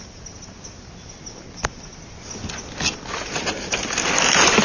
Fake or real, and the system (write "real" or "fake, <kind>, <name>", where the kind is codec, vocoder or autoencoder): real